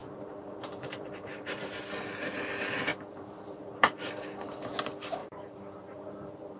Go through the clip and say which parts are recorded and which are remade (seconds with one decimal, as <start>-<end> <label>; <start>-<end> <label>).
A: 0.0-1.8 remade; 1.8-2.9 recorded; 2.9-4.1 remade; 4.1-5.2 recorded; 5.2-6.6 remade